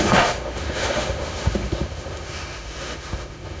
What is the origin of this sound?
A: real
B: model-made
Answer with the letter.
B